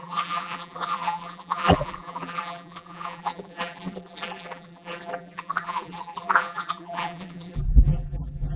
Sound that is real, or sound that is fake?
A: fake